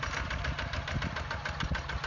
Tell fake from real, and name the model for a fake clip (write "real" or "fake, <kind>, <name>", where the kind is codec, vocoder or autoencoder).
real